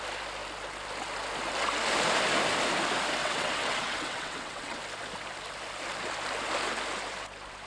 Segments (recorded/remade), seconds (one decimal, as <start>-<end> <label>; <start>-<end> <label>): 0.0-3.2 recorded; 3.2-4.8 remade; 4.8-7.7 recorded